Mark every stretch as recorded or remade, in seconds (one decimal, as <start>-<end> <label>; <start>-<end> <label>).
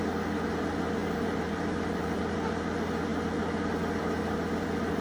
0.0-1.0 recorded; 1.0-2.2 remade; 2.2-5.0 recorded